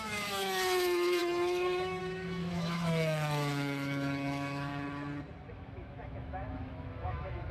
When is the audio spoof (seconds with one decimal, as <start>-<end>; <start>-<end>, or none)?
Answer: 0.0-4.7; 5.5-7.5